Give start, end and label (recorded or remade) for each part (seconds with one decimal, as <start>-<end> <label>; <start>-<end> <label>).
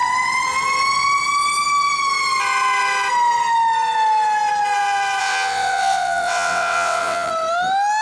0.0-5.2 recorded; 5.2-7.3 remade; 7.3-8.0 recorded